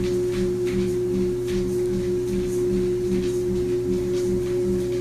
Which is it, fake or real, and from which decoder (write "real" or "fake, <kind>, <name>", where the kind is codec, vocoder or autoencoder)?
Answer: real